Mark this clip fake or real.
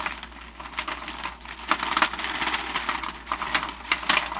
real